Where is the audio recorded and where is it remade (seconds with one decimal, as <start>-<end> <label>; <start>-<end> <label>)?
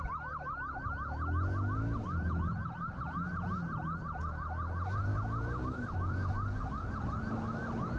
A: 0.0-8.0 recorded